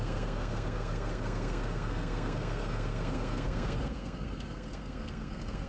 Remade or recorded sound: remade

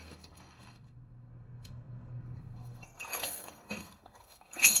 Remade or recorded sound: remade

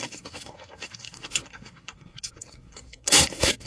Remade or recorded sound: remade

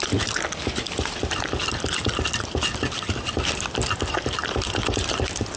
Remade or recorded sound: recorded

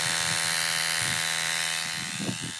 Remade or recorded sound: recorded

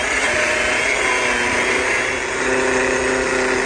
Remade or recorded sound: recorded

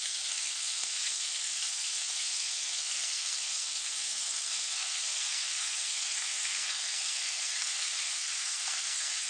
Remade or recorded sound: remade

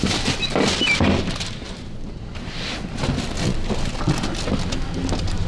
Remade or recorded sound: recorded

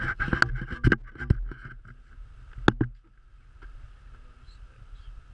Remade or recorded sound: recorded